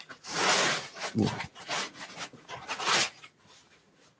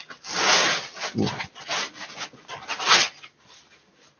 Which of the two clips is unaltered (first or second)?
second